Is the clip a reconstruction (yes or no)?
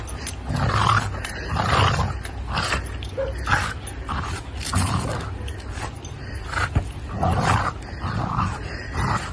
no